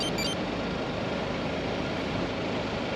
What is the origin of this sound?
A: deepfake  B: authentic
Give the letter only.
B